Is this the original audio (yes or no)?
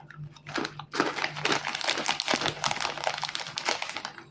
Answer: yes